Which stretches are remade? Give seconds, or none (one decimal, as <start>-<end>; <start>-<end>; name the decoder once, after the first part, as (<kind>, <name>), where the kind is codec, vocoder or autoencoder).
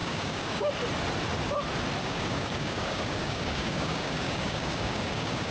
0.0-0.7 (codec, DAC); 2.0-5.5